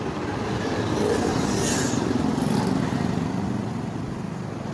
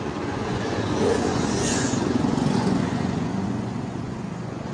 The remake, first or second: second